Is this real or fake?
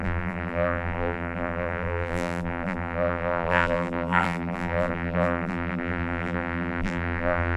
fake